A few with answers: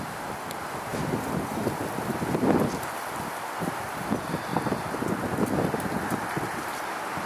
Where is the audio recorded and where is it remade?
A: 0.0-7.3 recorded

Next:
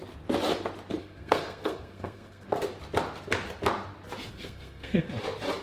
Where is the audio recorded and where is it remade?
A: 0.0-1.0 recorded; 1.0-2.5 remade; 2.5-4.3 recorded; 4.3-5.1 remade; 5.1-5.6 recorded

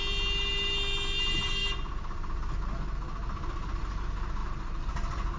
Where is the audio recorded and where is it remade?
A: 0.0-5.4 recorded

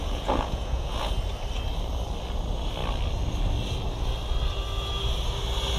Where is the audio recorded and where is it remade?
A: 0.0-1.1 remade; 1.1-5.8 recorded